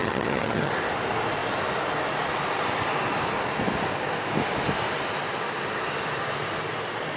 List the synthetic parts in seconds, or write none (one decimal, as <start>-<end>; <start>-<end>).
0.0-0.7